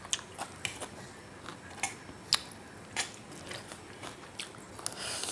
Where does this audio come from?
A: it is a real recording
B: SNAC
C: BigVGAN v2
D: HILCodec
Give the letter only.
A